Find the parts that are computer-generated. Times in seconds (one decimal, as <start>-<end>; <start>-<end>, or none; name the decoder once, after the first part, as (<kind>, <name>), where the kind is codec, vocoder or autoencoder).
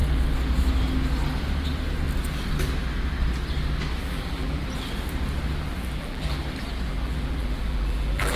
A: 4.0-4.6 (vocoder, BigVGAN v2); 6.0-6.4; 6.9-8.4